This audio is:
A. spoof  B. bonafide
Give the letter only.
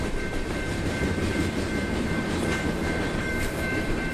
A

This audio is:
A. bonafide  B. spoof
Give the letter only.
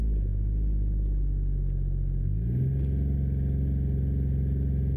A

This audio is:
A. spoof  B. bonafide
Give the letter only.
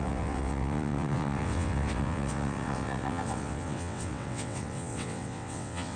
A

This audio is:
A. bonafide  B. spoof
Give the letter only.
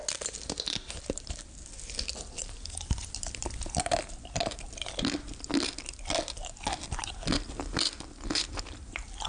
A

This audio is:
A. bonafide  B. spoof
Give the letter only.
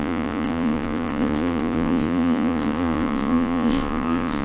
B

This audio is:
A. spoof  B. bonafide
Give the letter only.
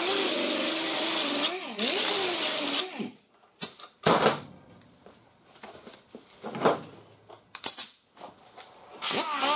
B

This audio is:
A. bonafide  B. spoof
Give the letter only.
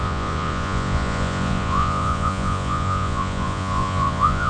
B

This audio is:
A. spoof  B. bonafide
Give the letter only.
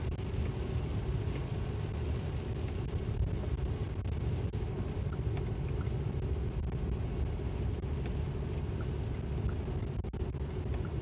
B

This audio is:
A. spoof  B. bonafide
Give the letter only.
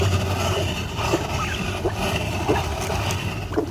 B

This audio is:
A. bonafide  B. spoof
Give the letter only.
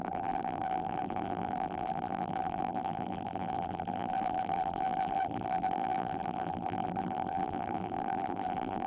B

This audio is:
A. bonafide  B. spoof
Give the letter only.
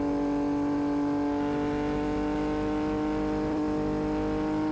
A